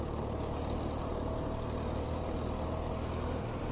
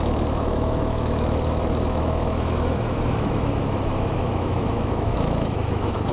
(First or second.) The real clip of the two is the first